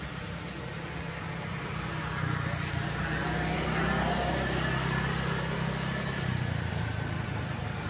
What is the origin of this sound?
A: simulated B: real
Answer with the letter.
B